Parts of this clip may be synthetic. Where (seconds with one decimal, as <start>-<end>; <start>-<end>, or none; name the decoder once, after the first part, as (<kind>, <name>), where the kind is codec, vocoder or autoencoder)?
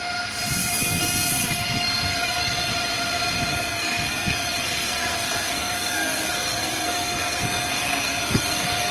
0.6-2.7 (codec, SNAC); 3.5-8.9